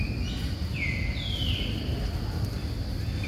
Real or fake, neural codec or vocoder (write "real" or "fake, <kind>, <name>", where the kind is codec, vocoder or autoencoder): real